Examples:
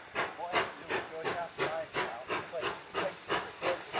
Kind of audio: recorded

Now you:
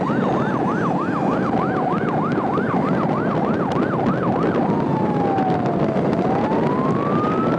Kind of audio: recorded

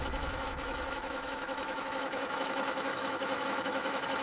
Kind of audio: remade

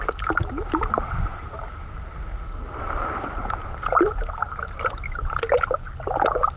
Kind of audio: recorded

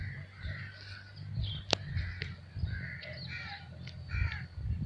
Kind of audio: recorded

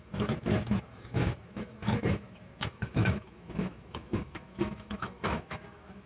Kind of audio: remade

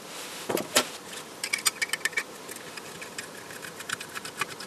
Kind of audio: recorded